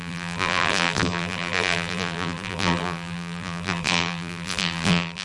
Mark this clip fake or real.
fake